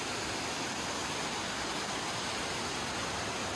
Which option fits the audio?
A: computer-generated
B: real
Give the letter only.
B